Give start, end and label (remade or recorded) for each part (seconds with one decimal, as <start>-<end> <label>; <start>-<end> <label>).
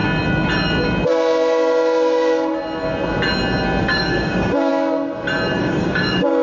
0.0-3.8 recorded; 3.8-4.7 remade; 4.7-5.6 recorded; 5.6-6.4 remade